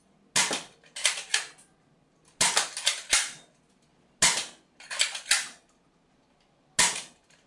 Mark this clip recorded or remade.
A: recorded